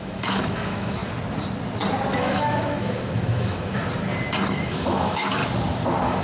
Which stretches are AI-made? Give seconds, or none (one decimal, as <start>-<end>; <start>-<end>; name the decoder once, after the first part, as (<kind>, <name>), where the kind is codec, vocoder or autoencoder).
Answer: 0.0-1.0 (autoencoder, DAC-VAE); 2.1-3.8; 4.4-5.4